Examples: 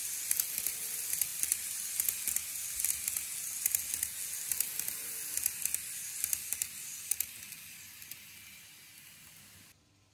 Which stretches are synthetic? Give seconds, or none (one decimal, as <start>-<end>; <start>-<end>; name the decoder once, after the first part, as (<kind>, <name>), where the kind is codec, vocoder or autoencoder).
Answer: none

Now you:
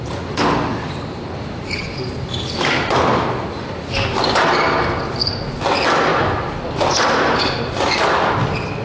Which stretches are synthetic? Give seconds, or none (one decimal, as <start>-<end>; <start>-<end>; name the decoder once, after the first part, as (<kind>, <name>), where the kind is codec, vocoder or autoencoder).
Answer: none

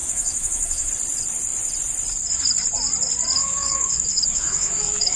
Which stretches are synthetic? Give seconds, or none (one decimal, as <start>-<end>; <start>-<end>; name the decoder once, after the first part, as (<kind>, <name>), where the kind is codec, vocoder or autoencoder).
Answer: 0.0-0.9 (autoencoder, DAC-VAE); 3.4-5.2

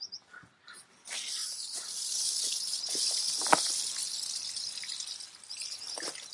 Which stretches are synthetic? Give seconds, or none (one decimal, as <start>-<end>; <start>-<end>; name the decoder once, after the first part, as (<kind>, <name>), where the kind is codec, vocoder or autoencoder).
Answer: none

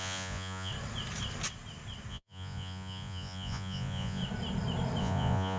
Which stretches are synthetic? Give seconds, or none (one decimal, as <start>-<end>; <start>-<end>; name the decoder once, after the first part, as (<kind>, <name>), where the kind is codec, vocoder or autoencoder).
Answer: 0.0-0.7 (vocoder, Vocos); 2.1-4.2; 5.0-5.6

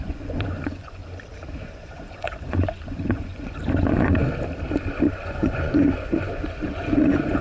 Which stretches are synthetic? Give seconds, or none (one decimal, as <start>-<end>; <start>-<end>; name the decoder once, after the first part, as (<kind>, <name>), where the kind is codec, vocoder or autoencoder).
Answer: 0.0-1.0 (vocoder, Vocos); 1.6-4.2; 5.1-7.4

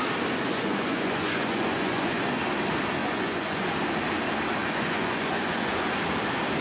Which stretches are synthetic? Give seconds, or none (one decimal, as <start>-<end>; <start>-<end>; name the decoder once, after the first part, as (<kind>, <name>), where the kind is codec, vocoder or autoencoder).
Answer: 0.5-2.3 (vocoder, Vocos); 3.0-3.7; 4.6-5.9

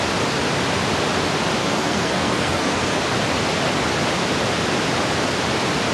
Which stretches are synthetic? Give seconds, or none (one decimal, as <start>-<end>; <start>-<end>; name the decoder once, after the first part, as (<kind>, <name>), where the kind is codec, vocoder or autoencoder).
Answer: 1.6-3.0 (codec, SNAC)